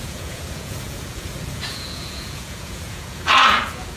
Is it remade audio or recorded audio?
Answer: remade